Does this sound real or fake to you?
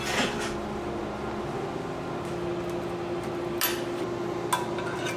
real